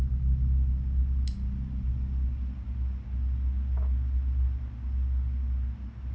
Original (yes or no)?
yes